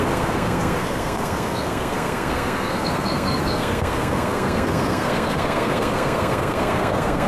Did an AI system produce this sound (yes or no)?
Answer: yes